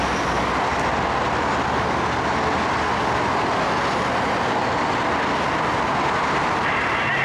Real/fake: real